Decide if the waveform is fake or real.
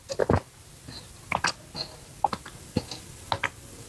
real